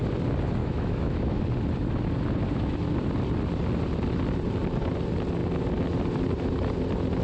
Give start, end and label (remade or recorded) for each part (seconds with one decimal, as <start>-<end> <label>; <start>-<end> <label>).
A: 0.0-0.6 recorded; 0.6-1.4 remade; 1.4-7.2 recorded